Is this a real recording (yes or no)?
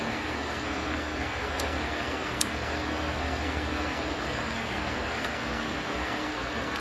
no